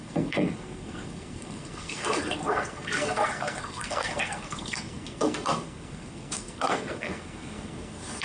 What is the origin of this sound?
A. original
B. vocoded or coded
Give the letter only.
B